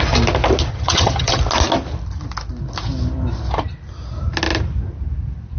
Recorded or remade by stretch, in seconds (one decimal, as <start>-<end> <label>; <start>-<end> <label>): 0.0-0.7 recorded; 0.7-1.4 remade; 1.4-5.6 recorded